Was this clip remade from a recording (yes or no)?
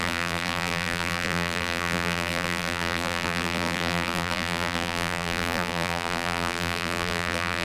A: yes